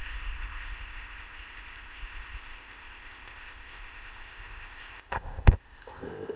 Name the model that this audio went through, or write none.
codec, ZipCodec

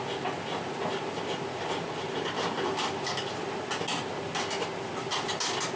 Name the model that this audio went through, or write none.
none